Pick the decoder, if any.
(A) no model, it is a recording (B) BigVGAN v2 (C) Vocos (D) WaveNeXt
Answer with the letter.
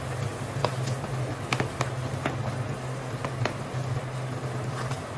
A